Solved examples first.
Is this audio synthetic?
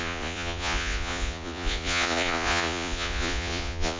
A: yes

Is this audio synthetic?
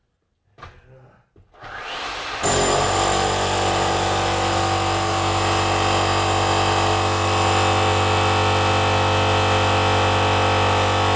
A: no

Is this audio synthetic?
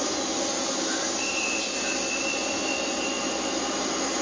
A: no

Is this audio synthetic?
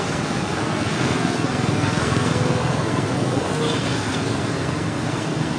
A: yes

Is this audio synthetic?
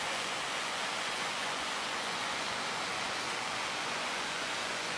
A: yes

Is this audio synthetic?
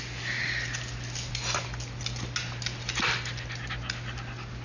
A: no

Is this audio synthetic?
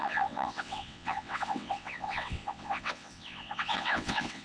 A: yes